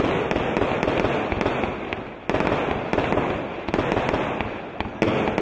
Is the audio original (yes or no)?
yes